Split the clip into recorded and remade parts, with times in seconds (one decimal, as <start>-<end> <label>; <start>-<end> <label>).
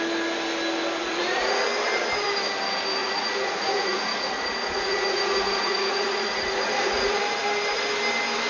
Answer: 0.0-1.0 recorded; 1.0-1.6 remade; 1.6-3.0 recorded; 3.0-7.2 remade; 7.2-8.5 recorded